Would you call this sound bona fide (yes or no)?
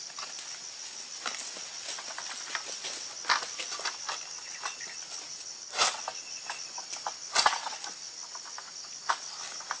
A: yes